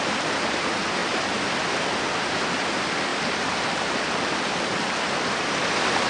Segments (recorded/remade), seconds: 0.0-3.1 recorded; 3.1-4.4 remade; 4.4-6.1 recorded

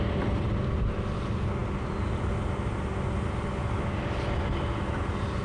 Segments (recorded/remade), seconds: 0.0-5.4 recorded

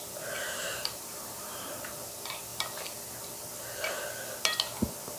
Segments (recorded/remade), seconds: 0.0-0.4 recorded; 0.4-1.9 remade; 1.9-5.2 recorded

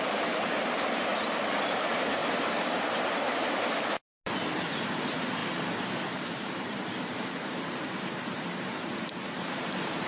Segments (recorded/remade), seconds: 0.0-1.1 remade; 1.1-1.6 recorded; 1.6-2.2 remade; 2.2-4.6 recorded; 4.6-10.1 remade